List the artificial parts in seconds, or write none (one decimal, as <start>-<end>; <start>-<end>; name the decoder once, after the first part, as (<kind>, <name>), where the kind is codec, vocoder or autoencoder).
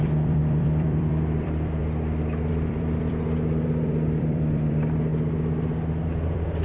0.0-1.8 (vocoder, BigVGAN v2); 2.5-5.1; 6.0-6.6